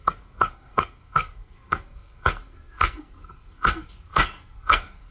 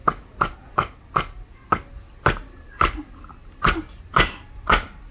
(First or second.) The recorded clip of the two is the second